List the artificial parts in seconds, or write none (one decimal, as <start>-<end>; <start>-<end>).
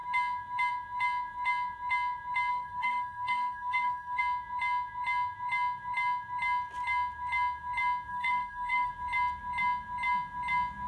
2.5-4.2; 8.1-8.9